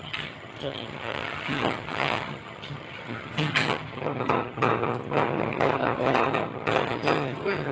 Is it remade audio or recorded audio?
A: remade